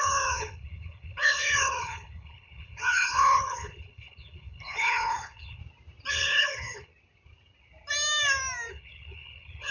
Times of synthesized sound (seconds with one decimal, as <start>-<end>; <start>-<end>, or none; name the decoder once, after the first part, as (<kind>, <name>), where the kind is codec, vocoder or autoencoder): 0.0-5.6 (codec, HILCodec); 6.1-6.9; 8.7-9.7